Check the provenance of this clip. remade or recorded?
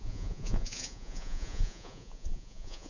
remade